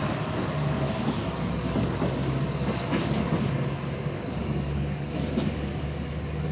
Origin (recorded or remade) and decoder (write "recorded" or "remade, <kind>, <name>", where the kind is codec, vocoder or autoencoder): remade, codec, DAC